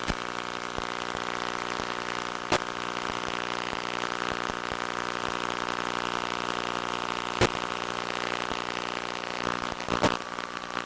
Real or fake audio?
real